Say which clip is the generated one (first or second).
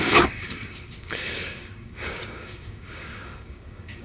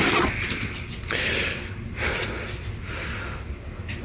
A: first